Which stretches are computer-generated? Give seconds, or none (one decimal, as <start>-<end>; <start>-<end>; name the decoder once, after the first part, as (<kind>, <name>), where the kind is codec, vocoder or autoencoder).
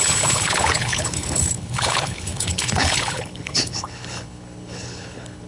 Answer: 0.0-5.5 (codec, HILCodec)